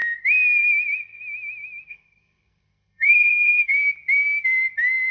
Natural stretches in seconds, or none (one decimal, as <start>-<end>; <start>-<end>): 0.0-1.9; 3.8-5.1